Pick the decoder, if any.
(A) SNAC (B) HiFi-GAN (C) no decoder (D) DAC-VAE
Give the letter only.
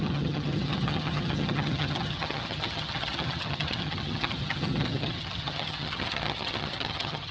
B